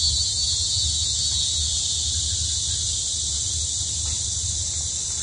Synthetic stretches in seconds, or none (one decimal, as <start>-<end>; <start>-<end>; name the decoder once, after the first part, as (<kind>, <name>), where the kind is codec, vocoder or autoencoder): none